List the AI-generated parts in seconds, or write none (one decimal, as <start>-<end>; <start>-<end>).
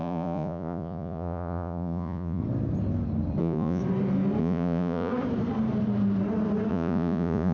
0.0-2.4; 3.4-3.8; 4.4-5.1; 6.7-7.5